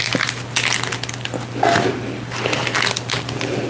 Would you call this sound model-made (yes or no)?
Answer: no